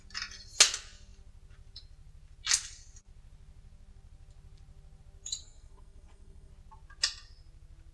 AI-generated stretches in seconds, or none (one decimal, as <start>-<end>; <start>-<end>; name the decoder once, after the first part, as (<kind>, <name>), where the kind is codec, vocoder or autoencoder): 5.4-6.5 (codec, SNAC)